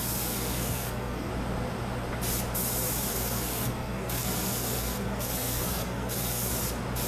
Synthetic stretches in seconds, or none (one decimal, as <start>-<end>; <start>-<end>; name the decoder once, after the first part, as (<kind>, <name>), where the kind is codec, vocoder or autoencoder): 0.0-1.3 (codec, SNAC); 3.1-6.5